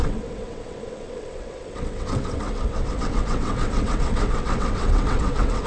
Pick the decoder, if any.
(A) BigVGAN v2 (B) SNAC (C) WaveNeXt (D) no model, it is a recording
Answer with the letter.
C